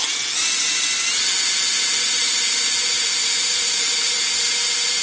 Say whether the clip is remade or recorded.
recorded